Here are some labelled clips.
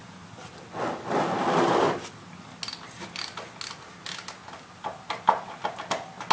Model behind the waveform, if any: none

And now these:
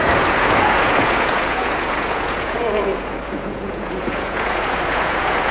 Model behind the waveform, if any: vocoder, Vocos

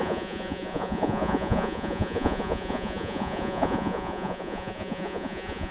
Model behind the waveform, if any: vocoder, Vocos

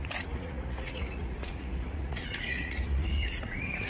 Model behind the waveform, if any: vocoder, Vocos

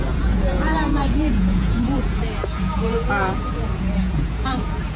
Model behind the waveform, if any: vocoder, Vocos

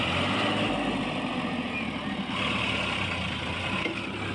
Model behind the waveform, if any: none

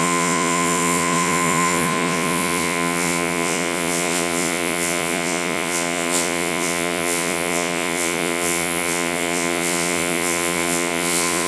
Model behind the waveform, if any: vocoder, Vocos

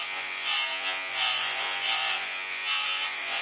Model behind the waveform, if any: vocoder, Vocos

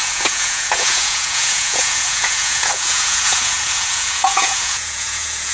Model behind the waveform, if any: vocoder, Vocos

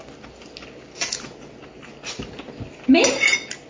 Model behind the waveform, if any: none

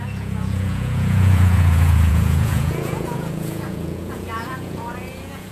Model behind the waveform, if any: vocoder, Vocos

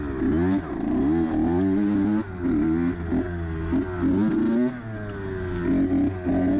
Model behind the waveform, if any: none